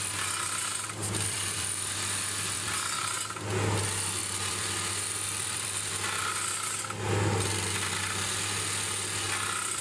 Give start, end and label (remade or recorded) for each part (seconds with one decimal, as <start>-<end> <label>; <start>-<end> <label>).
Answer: 0.0-0.7 recorded; 0.7-2.7 remade; 2.7-4.2 recorded; 4.2-5.9 remade; 5.9-9.8 recorded